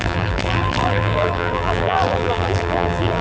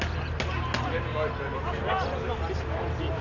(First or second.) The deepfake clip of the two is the first